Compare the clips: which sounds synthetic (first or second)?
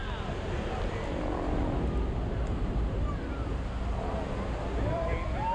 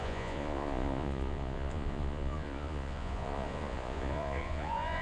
second